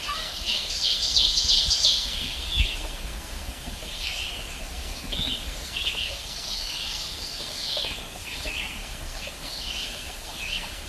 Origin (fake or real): fake